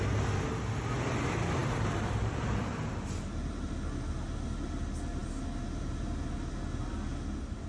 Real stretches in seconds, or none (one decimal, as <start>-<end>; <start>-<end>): 0.0-1.6; 3.7-7.7